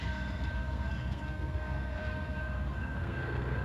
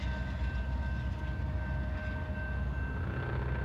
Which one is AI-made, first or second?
first